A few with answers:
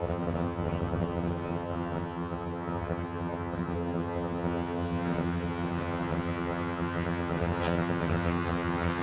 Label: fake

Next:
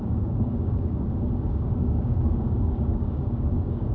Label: fake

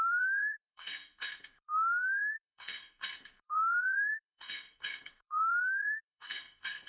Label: fake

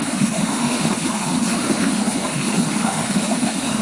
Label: fake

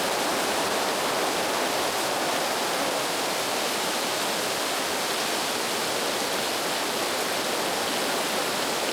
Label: real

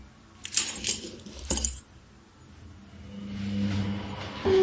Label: real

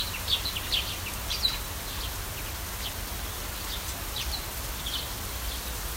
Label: real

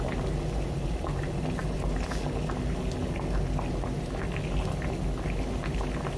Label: real